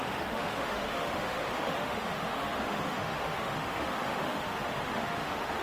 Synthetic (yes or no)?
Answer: yes